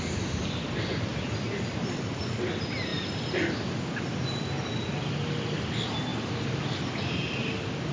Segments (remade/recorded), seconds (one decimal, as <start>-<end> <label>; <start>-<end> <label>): 0.0-7.9 recorded